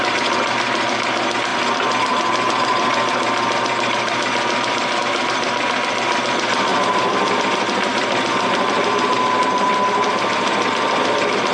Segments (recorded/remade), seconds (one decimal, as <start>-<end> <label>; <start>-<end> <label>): 0.0-6.7 recorded; 6.7-7.4 remade; 7.4-7.9 recorded; 7.9-9.1 remade; 9.1-9.7 recorded; 9.7-11.1 remade; 11.1-11.5 recorded